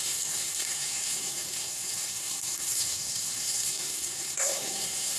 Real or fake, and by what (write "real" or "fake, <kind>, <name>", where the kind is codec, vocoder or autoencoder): fake, codec, SNAC